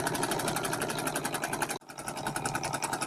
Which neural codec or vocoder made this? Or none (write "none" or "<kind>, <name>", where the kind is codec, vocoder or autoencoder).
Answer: none